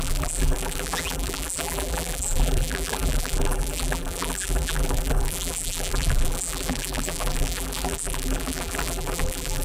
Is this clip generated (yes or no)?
yes